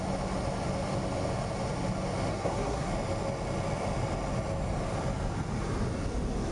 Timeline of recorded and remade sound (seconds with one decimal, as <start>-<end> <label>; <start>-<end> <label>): 0.0-2.3 recorded; 2.3-2.9 remade; 2.9-6.5 recorded